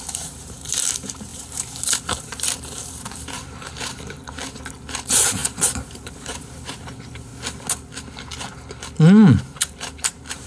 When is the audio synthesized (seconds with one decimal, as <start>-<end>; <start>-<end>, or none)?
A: 0.0-7.3; 9.4-10.5

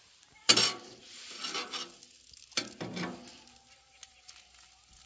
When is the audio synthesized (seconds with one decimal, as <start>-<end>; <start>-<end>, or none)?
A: none

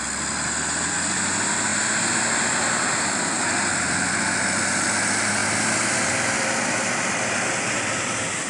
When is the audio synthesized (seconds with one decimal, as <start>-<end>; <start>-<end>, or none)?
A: 5.4-7.6

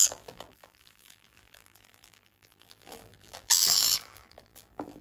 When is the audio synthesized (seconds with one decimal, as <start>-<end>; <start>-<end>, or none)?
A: 0.0-5.0